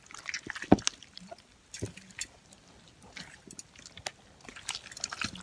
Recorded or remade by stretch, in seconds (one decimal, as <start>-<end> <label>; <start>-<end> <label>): 0.0-5.4 recorded